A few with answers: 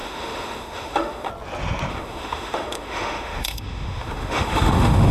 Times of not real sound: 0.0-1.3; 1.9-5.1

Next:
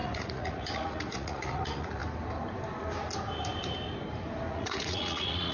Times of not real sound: 0.0-2.0; 4.5-5.5

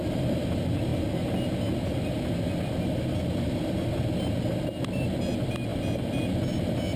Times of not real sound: none

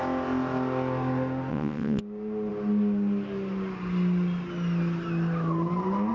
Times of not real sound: 1.5-2.0

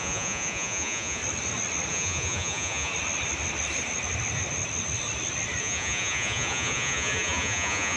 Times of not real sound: 0.0-1.2; 1.9-2.9; 5.6-8.0